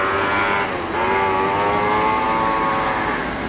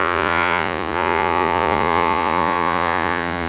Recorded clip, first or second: first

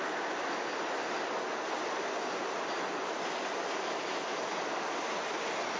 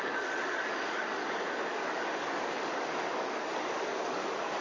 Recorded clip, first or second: first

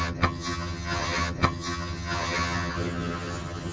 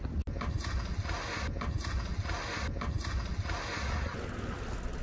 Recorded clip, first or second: second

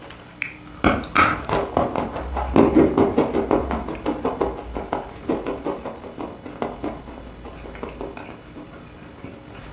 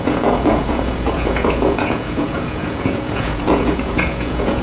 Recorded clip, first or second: first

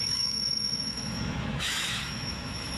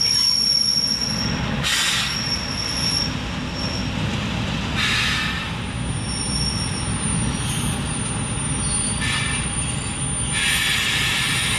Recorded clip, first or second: second